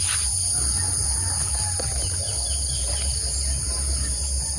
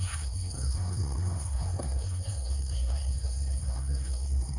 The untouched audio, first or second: first